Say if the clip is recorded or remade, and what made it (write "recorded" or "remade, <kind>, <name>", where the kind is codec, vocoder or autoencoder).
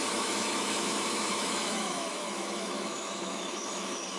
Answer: remade, autoencoder, DAC-VAE